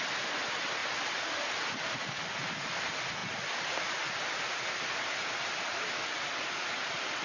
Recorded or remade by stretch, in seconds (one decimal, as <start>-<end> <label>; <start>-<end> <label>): 0.0-7.2 recorded